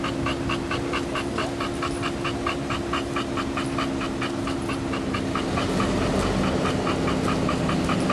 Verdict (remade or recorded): recorded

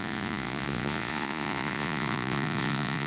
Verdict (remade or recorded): remade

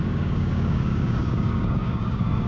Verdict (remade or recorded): remade